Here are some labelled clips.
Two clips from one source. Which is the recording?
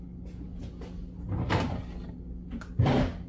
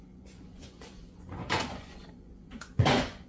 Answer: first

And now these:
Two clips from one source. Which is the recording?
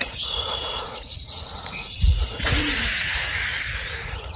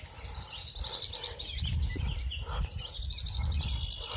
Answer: second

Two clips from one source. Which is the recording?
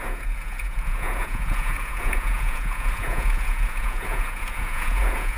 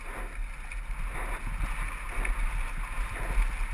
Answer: second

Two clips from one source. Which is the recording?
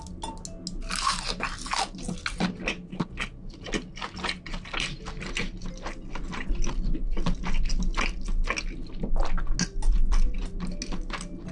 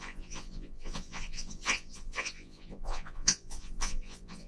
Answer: first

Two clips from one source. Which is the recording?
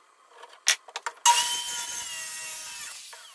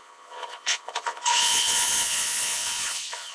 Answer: first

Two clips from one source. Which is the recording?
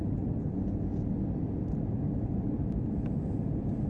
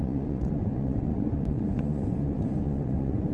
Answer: first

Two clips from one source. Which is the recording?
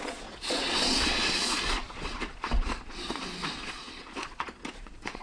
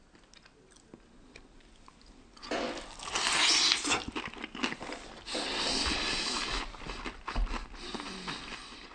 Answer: second